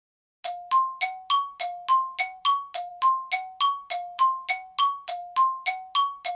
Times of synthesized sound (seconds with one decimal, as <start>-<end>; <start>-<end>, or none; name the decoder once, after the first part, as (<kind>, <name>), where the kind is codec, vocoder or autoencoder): none